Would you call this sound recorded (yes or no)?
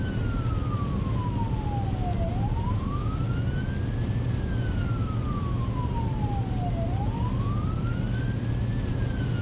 yes